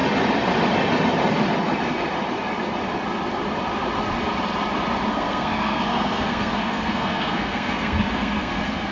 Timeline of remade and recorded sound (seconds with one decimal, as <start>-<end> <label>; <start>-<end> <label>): 0.0-5.1 recorded; 5.1-8.9 remade